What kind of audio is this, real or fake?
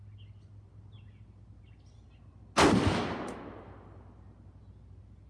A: real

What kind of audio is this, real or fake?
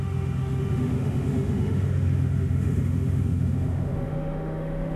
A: fake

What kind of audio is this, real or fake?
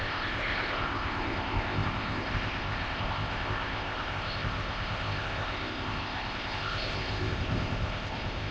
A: fake